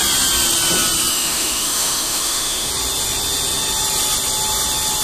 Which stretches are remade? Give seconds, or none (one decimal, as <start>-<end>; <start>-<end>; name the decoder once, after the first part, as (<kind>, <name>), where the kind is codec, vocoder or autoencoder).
1.1-2.7 (autoencoder, DAC-VAE)